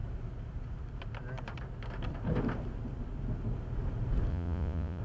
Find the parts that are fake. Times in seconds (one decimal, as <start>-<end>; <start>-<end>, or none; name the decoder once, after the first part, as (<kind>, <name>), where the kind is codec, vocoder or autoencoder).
4.3-5.0 (vocoder, Vocos)